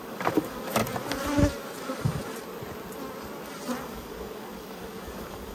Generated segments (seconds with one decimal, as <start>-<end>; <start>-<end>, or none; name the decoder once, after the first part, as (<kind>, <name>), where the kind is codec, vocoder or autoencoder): 0.0-0.8 (codec, DAC); 1.8-2.2; 3.8-5.5